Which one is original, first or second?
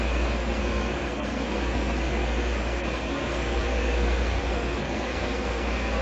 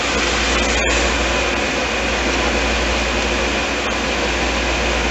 second